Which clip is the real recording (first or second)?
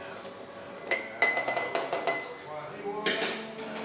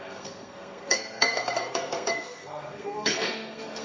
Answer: first